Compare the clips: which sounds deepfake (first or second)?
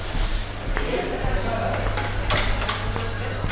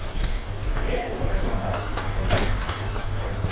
second